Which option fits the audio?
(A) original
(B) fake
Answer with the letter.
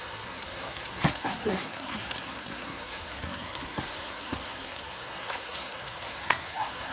B